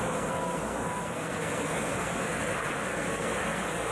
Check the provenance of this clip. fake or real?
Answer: fake